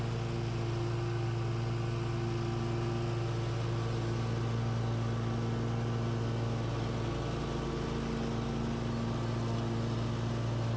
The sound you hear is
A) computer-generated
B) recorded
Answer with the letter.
B